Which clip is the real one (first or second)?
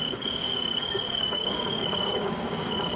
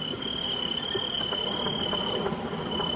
second